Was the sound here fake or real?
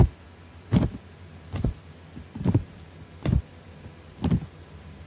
real